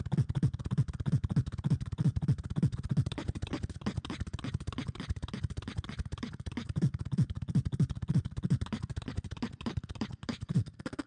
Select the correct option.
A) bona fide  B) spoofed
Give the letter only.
A